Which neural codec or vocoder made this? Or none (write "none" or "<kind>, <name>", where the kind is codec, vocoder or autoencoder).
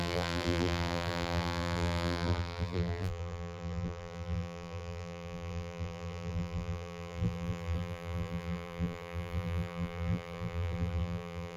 vocoder, BigVGAN v2